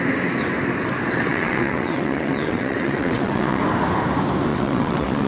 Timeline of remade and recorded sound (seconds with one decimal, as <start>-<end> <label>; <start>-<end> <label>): 0.0-1.3 recorded; 1.3-3.6 remade; 3.6-4.5 recorded; 4.5-5.3 remade